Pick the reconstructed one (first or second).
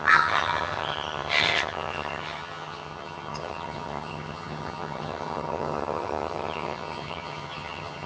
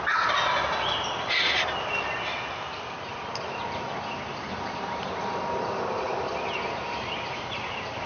first